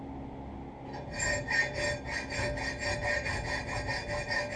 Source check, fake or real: real